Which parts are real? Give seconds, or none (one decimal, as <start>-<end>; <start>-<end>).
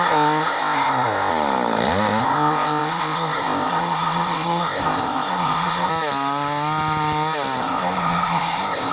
1.3-2.2; 5.9-7.6